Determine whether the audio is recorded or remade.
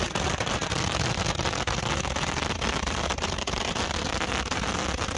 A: remade